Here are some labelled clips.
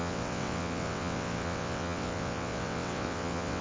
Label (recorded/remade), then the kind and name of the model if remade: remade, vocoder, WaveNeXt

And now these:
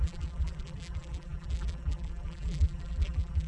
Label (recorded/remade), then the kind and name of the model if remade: remade, vocoder, BigVGAN v2